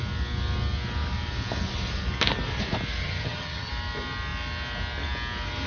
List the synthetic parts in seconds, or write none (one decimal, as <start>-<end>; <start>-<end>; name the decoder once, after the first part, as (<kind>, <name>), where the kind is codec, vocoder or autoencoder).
3.0-3.7 (vocoder, HiFi-GAN)

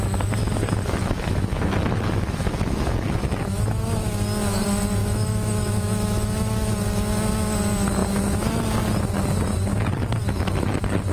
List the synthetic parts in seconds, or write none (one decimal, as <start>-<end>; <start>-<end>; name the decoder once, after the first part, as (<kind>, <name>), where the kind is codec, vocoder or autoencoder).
0.4-3.8 (autoencoder, DAC-VAE); 5.0-6.7; 10.2-11.1

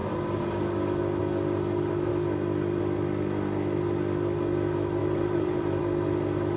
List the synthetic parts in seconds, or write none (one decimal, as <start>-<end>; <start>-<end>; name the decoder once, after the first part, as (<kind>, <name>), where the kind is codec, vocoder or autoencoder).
5.0-5.8 (vocoder, BigVGAN v2)

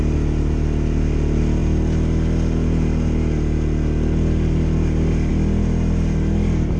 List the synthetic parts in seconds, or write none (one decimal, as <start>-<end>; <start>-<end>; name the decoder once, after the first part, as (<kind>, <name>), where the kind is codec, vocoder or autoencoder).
none

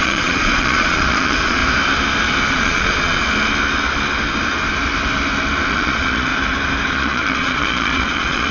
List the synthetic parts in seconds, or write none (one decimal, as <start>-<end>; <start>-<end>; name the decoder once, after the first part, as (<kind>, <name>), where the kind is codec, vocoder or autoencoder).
0.0-1.6 (vocoder, Vocos); 2.5-3.2; 5.7-6.3; 6.9-8.5